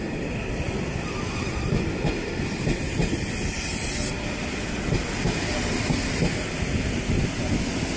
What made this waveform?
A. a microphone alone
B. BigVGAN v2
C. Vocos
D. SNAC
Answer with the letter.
A